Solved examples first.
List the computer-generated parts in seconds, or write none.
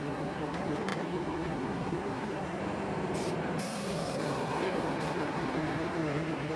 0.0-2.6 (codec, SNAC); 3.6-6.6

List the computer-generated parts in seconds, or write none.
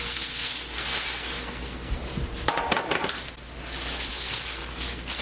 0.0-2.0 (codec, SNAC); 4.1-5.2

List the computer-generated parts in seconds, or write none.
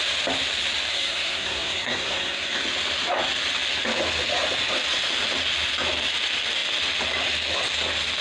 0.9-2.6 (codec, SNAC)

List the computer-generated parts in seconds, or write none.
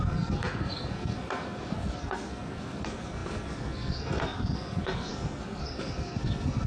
0.0-6.7 (codec, SNAC)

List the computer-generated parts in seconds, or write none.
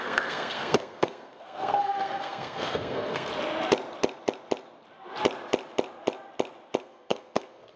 0.0-3.3 (codec, SNAC); 6.8-7.8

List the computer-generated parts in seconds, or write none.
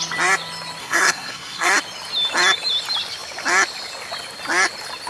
0.8-1.8 (codec, SNAC)